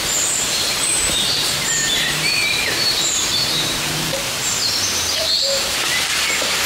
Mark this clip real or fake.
fake